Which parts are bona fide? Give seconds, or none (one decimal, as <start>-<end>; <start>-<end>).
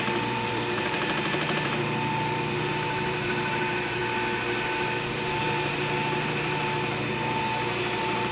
4.0-5.1